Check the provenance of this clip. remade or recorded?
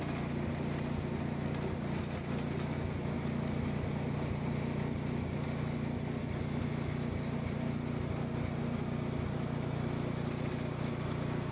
recorded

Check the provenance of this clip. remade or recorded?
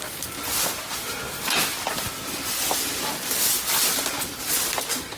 recorded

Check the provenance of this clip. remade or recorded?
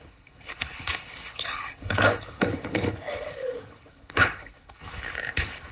remade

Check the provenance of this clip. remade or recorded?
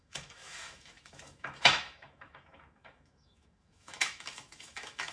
remade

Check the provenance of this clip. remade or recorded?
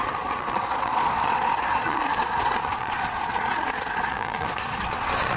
remade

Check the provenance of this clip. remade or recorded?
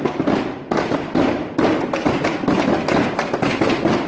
recorded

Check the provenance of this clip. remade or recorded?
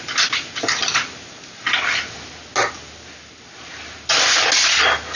recorded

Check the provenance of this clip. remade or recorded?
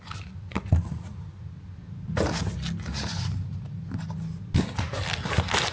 recorded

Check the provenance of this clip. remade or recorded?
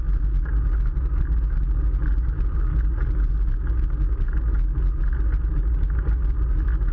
recorded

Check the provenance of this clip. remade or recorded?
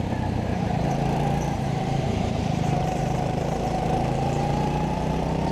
remade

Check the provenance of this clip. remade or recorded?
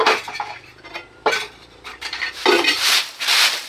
remade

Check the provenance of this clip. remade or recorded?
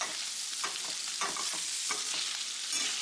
recorded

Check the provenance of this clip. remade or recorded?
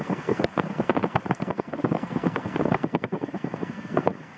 remade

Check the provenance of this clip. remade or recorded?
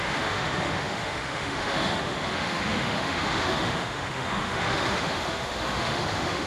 remade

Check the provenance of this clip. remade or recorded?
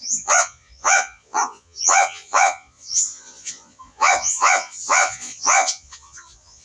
remade